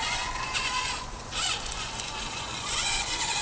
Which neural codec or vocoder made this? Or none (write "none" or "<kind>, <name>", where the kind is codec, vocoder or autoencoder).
vocoder, Vocos